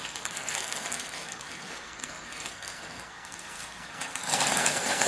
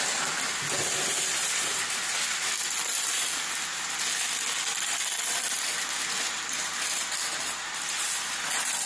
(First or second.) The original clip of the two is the second